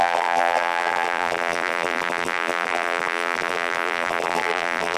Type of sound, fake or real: fake